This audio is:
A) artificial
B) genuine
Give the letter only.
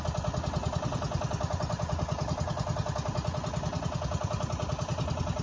B